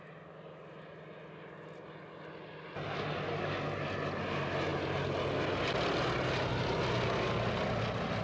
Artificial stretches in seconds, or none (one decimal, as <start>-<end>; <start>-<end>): none